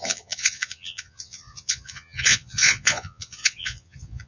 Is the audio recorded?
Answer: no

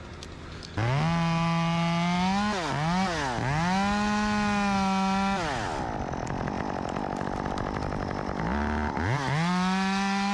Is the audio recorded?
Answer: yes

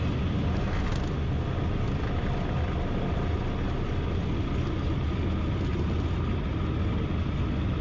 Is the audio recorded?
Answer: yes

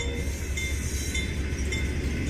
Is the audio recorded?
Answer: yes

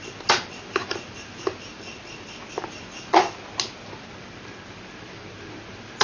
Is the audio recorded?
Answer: yes